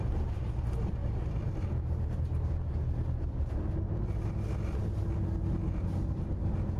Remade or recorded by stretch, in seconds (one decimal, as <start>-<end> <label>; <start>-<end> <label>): 0.0-6.8 recorded